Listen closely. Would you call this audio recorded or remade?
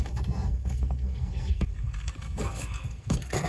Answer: remade